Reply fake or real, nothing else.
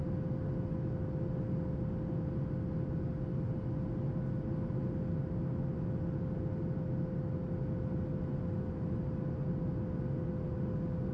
real